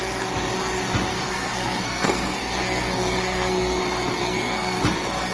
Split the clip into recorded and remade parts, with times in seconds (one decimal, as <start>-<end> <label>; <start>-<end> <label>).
0.0-1.1 recorded; 1.1-3.8 remade; 3.8-4.2 recorded; 4.2-4.8 remade; 4.8-5.3 recorded

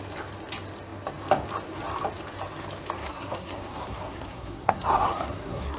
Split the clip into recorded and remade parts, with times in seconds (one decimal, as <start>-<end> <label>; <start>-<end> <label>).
0.0-3.0 recorded; 3.0-5.8 remade

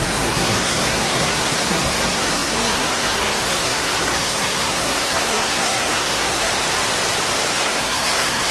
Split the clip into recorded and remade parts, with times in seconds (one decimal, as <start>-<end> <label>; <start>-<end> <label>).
0.0-6.5 remade; 6.5-7.5 recorded; 7.5-8.5 remade

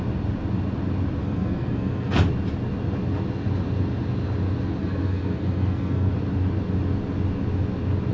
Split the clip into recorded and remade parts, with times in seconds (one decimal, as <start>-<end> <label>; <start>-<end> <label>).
0.0-1.2 recorded; 1.2-2.2 remade; 2.2-4.8 recorded; 4.8-6.1 remade; 6.1-8.1 recorded

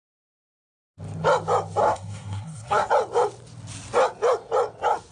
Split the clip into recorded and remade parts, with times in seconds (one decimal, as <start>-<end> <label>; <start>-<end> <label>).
0.0-1.8 recorded; 1.8-2.9 remade; 2.9-5.1 recorded

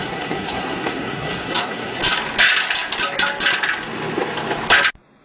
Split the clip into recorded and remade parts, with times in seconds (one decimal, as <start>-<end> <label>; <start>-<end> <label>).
0.0-2.0 remade; 2.0-5.2 recorded

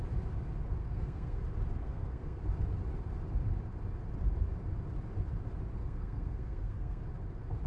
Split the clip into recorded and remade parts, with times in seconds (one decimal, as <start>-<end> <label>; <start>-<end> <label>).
0.0-0.8 recorded; 0.8-1.4 remade; 1.4-1.8 recorded; 1.8-2.4 remade; 2.4-5.8 recorded; 5.8-7.0 remade; 7.0-7.7 recorded